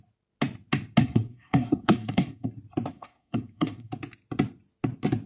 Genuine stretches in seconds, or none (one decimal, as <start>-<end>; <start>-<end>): 0.0-1.0; 2.5-2.9; 3.9-5.3